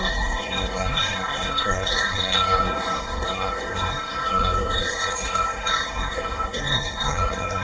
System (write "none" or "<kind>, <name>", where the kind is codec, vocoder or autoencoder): codec, SNAC